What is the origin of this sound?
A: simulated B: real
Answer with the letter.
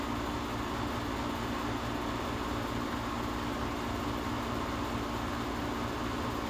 B